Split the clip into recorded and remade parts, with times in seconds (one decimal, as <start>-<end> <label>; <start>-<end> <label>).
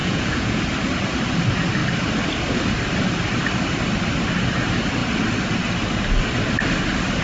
0.0-0.6 remade; 0.6-7.2 recorded